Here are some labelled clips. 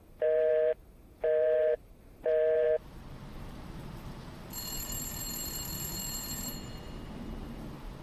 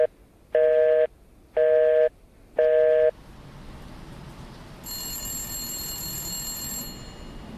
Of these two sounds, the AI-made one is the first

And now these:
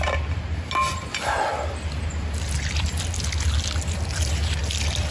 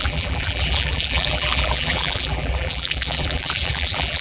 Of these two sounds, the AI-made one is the second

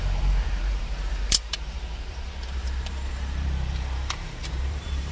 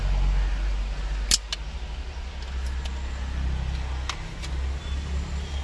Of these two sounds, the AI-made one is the first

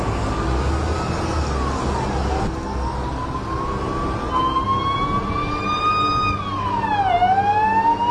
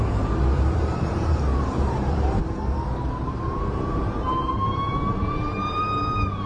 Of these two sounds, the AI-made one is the second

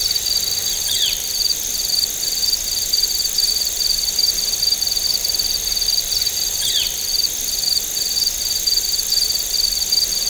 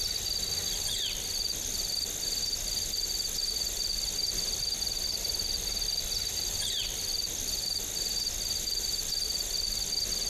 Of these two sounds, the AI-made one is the first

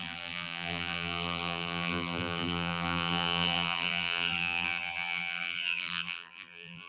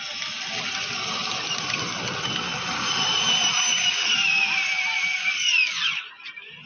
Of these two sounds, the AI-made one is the first